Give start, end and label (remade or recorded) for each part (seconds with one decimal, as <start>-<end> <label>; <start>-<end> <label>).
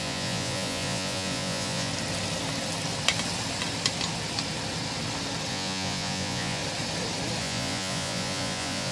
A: 0.0-1.9 remade; 1.9-5.5 recorded; 5.5-6.6 remade; 6.6-7.4 recorded; 7.4-8.9 remade